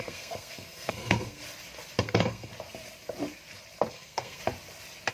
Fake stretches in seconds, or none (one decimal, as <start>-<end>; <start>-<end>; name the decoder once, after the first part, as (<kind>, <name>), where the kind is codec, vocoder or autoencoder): 0.0-1.4 (codec, SNAC); 2.0-2.5; 3.9-4.4

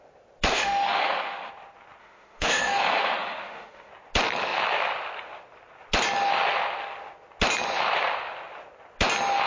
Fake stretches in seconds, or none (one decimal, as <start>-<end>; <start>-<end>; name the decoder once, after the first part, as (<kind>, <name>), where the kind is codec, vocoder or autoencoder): 0.5-1.5 (autoencoder, DAC-VAE); 2.0-3.9

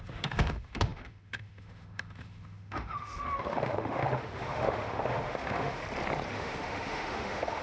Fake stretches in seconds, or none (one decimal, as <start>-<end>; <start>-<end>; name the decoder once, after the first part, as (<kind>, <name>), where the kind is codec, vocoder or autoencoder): 0.0-5.8 (autoencoder, DAC-VAE); 6.3-7.6

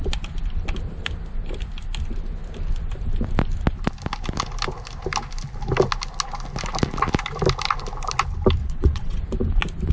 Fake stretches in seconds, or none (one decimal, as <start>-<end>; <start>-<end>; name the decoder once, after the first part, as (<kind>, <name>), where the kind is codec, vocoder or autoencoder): 8.6-9.2 (vocoder, WaveNeXt)